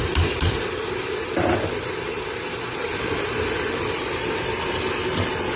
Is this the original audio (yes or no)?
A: no